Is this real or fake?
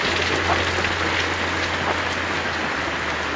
real